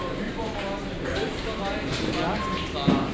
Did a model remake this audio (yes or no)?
no